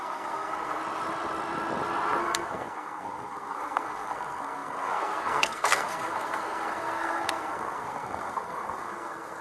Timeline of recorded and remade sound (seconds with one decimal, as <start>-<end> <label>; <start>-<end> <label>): 0.0-0.8 remade; 0.8-2.2 recorded; 2.2-9.4 remade